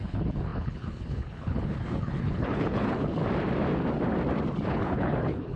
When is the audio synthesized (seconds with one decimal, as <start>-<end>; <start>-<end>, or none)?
0.0-3.2; 4.7-5.6